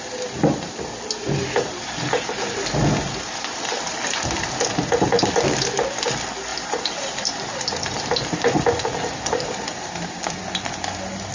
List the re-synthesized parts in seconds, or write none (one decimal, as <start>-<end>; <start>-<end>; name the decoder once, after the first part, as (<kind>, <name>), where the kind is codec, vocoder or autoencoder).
6.5-10.4 (vocoder, BigVGAN v2)